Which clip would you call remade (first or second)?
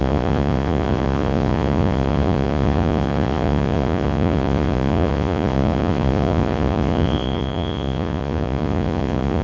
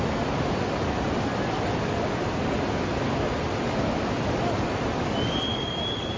first